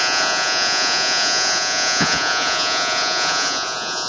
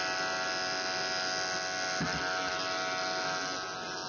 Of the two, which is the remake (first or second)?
first